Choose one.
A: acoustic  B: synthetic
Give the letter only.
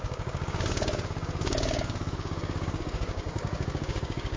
B